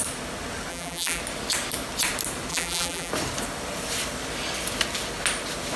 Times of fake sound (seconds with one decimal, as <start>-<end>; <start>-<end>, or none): 0.7-1.2; 2.5-3.1